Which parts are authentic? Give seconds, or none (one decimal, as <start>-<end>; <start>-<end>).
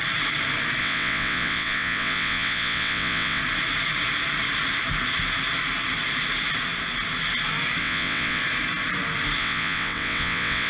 0.0-0.8; 3.4-7.8; 8.4-9.4